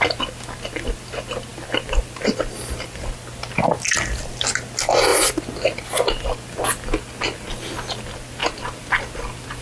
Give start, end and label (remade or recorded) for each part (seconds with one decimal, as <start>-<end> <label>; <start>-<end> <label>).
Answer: 0.0-9.6 recorded